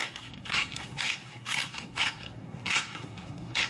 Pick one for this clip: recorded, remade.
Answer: remade